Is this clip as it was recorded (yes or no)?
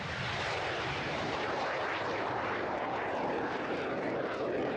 no